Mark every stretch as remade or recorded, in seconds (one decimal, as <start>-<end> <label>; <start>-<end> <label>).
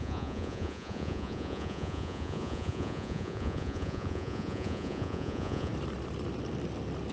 0.0-5.7 remade; 5.7-7.1 recorded